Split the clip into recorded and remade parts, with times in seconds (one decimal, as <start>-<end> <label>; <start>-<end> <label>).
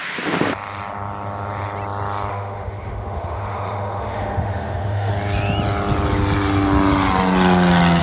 0.0-2.3 recorded; 2.3-5.1 remade; 5.1-8.0 recorded